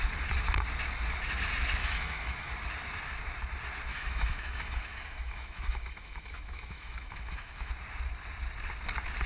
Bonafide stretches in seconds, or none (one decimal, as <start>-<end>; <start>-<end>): 0.0-1.8; 2.5-3.9; 7.7-9.3